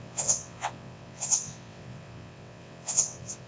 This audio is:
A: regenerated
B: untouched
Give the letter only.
A